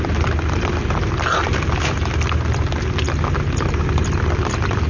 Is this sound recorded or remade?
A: recorded